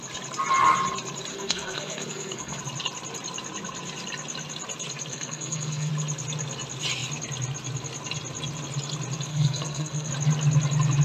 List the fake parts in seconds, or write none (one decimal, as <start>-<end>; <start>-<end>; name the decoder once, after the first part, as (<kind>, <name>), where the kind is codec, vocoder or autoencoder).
1.3-2.6 (codec, SNAC); 5.1-5.9; 9.3-10.1